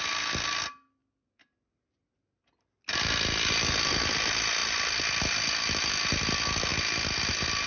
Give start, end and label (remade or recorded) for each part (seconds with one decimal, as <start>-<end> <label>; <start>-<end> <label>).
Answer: 0.0-7.7 recorded